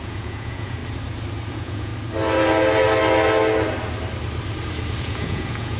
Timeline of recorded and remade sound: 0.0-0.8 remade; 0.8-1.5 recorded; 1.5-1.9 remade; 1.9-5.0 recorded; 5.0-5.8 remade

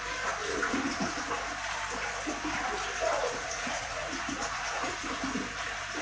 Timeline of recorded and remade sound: 0.0-0.4 recorded; 0.4-1.3 remade; 1.3-3.2 recorded; 3.2-5.1 remade; 5.1-6.0 recorded

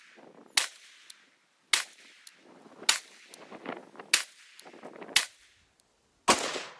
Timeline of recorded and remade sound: 0.0-6.8 recorded

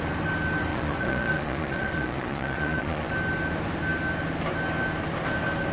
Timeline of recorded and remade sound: 0.0-0.7 recorded; 0.7-3.1 remade; 3.1-5.7 recorded

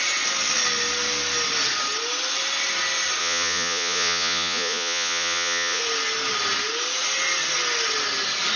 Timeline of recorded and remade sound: 0.0-3.2 recorded; 3.2-5.8 remade; 5.8-8.6 recorded